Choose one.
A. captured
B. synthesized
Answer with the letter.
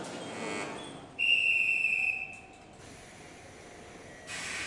A